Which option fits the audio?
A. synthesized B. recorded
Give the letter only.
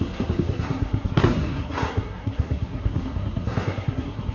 A